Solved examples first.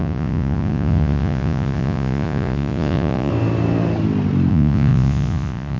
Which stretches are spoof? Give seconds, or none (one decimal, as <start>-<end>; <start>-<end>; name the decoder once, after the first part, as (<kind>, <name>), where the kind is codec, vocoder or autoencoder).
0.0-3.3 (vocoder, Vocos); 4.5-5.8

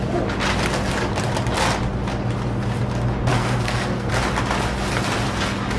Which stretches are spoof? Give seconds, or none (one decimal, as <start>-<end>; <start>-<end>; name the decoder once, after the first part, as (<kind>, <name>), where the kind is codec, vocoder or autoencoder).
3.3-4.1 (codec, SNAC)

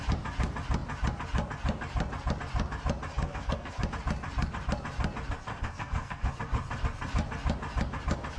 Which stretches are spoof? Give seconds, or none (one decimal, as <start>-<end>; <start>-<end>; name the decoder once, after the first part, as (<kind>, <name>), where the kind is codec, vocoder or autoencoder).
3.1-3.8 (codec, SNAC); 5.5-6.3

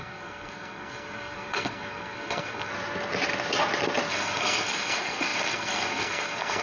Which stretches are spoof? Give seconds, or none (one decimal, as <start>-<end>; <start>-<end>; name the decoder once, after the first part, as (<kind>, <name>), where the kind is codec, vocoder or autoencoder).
0.0-2.7 (codec, SNAC); 4.1-6.6